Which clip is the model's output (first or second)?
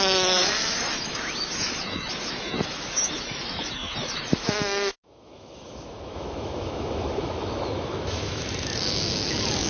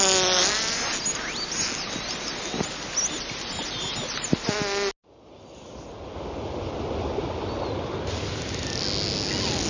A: first